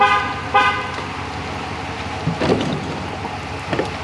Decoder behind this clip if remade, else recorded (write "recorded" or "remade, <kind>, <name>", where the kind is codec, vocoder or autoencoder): recorded